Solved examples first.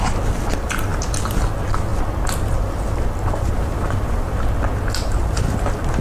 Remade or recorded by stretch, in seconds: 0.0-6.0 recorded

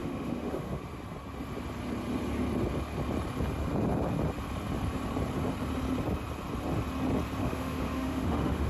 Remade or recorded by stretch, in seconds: 0.0-0.8 remade; 0.8-7.4 recorded; 7.4-8.7 remade

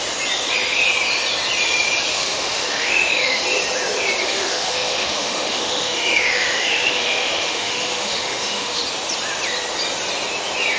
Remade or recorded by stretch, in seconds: 0.0-2.1 recorded; 2.1-3.4 remade; 3.4-4.2 recorded; 4.2-8.8 remade; 8.8-10.8 recorded

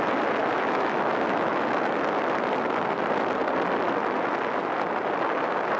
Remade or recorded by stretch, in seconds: 0.0-0.4 recorded; 0.4-1.5 remade; 1.5-5.8 recorded